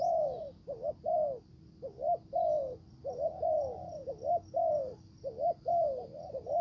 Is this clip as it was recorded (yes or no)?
yes